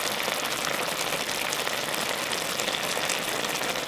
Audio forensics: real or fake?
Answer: real